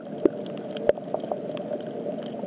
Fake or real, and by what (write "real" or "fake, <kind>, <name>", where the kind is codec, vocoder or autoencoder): real